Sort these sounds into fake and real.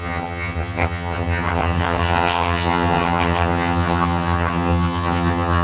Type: fake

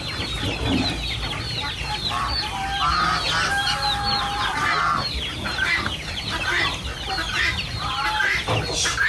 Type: real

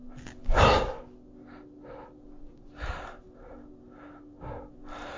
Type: real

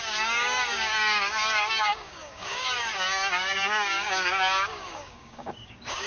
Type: fake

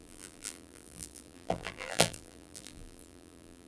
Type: fake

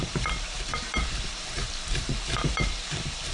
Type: fake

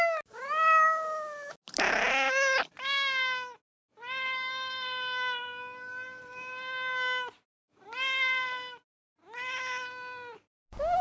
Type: real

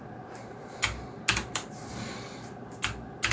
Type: real